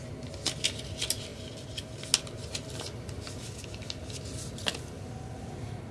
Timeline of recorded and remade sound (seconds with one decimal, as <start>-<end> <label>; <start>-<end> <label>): 0.0-5.9 recorded